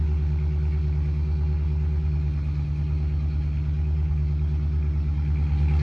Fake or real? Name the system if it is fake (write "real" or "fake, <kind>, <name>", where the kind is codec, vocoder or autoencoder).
real